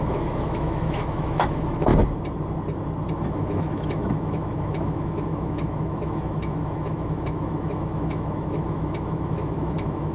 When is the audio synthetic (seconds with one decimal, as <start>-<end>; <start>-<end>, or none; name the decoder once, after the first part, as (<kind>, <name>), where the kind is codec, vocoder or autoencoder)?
0.0-1.9 (autoencoder, DAC-VAE); 3.1-10.1